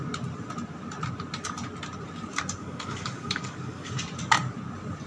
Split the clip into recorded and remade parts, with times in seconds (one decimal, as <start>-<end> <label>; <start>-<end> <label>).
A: 0.0-2.6 recorded; 2.6-3.9 remade; 3.9-5.1 recorded